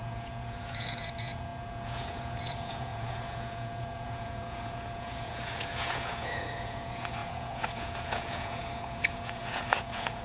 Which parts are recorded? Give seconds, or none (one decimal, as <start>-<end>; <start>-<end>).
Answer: none